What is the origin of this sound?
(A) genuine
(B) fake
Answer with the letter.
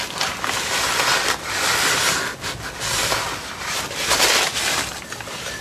A